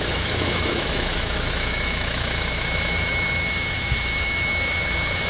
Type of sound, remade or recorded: remade